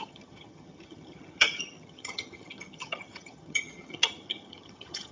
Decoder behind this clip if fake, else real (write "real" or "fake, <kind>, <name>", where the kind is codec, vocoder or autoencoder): fake, vocoder, HiFi-GAN